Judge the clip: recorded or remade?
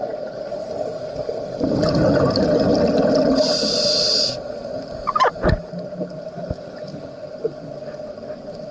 recorded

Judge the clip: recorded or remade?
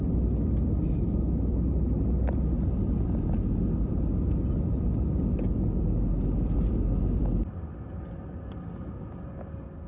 recorded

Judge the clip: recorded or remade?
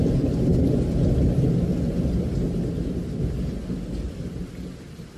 recorded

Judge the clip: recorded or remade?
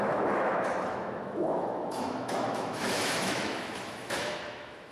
remade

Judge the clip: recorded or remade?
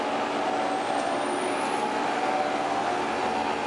recorded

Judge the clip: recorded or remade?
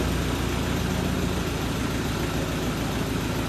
recorded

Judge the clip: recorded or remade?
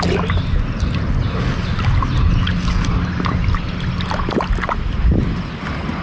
recorded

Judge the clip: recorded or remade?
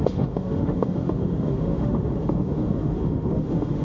remade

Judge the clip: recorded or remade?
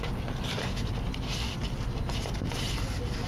recorded